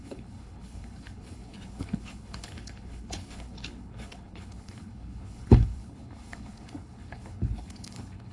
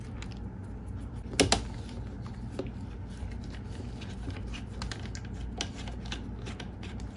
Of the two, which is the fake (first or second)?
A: first